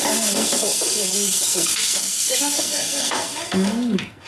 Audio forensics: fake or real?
fake